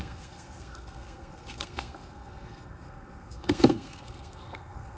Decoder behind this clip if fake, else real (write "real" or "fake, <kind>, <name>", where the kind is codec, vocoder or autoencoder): fake, codec, SNAC